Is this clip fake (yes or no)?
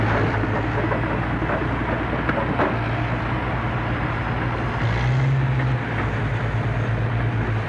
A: no